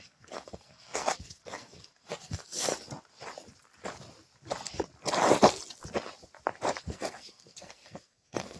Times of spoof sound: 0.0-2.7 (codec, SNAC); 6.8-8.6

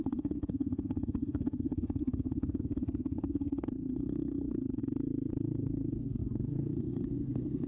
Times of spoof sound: 0.0-4.8 (codec, SNAC); 5.3-7.7

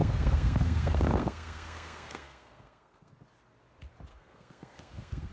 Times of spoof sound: 0.0-3.1 (codec, SNAC); 4.1-5.3

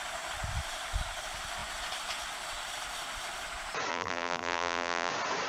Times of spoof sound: 3.9-5.1 (vocoder, BigVGAN v2)